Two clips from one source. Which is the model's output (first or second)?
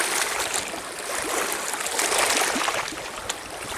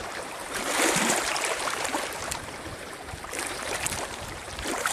second